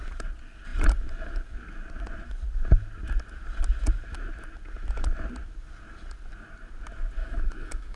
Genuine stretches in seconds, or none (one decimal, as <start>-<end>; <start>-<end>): 0.0-7.2